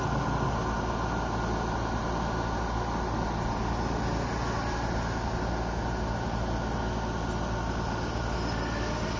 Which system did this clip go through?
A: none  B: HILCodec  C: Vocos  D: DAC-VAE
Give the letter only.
A